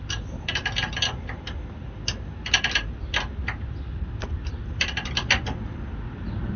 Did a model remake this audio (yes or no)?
no